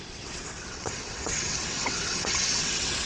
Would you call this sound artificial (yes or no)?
yes